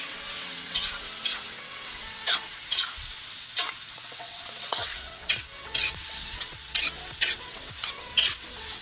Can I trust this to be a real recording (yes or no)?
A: no